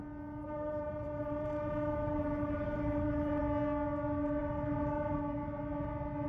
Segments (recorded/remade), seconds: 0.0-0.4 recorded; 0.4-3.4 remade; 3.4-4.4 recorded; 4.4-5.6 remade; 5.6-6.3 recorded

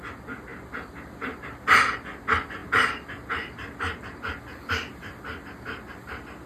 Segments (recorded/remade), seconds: 0.0-6.5 recorded